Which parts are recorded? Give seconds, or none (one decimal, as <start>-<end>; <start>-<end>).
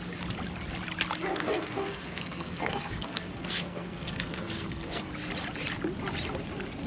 0.0-1.3; 5.1-6.9